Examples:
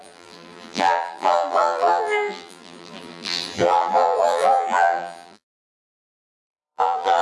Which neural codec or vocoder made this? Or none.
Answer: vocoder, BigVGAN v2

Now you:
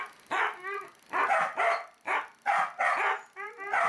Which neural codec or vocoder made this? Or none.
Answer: none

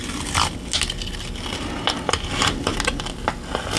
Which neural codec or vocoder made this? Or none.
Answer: none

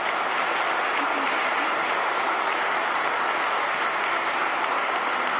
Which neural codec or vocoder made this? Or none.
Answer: none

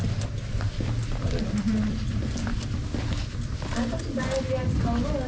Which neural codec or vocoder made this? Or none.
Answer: none